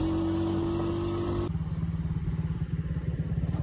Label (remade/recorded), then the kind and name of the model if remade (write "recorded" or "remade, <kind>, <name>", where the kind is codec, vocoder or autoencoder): recorded